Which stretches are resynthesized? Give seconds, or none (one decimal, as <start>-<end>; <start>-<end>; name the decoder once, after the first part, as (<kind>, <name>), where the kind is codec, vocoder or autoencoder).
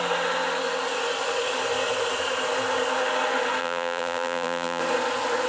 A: 3.6-4.8 (vocoder, BigVGAN v2)